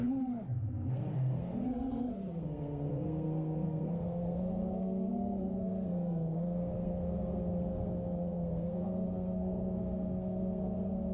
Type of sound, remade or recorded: remade